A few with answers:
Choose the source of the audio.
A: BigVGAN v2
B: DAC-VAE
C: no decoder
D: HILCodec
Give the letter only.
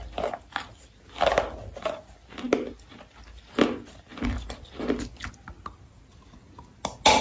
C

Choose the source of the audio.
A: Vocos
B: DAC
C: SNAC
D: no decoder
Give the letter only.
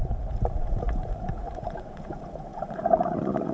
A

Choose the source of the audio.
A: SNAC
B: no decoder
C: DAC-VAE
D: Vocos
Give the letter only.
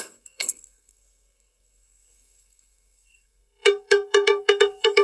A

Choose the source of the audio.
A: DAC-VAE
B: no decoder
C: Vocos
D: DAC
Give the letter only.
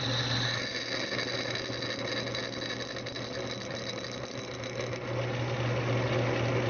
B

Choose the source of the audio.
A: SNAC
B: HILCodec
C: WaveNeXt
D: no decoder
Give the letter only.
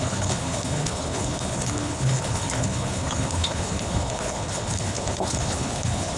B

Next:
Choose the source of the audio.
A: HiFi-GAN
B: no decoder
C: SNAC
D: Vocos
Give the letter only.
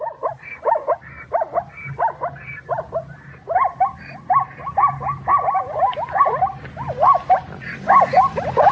B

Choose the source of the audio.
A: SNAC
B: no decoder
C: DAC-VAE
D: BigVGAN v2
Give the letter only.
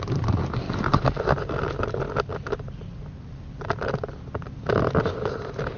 B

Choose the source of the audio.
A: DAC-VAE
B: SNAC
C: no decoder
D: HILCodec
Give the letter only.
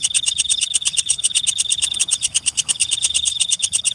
D